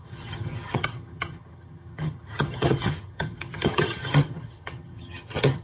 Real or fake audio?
fake